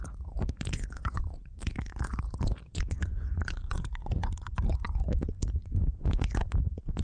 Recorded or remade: remade